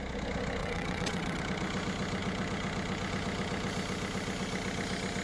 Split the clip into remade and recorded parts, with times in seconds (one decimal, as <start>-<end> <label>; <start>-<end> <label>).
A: 0.0-0.6 recorded; 0.6-1.4 remade; 1.4-5.2 recorded

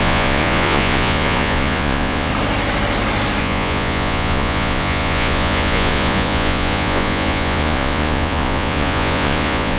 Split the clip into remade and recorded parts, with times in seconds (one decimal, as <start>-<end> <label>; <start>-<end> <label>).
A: 0.0-2.3 remade; 2.3-3.4 recorded; 3.4-9.8 remade